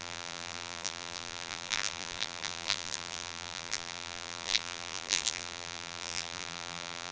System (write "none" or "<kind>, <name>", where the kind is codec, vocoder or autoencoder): vocoder, BigVGAN v2